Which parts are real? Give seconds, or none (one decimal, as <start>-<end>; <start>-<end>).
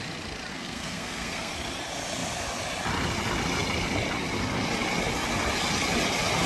0.0-0.5; 1.5-6.5